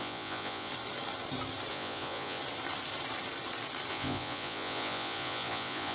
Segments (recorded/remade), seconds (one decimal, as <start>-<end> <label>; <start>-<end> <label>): 0.0-0.7 remade; 0.7-1.7 recorded; 1.7-2.4 remade; 2.4-3.9 recorded; 3.9-5.9 remade